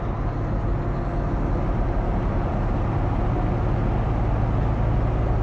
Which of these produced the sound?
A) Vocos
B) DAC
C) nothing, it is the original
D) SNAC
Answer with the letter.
C